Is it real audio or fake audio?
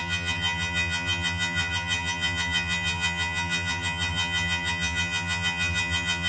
fake